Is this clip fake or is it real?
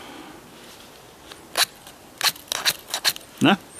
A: real